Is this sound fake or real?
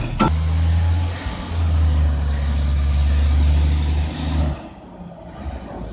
real